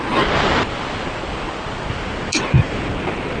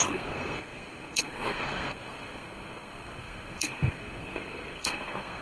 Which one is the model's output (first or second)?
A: second